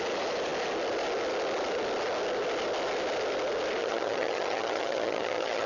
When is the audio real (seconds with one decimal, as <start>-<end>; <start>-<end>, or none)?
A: 0.0-3.8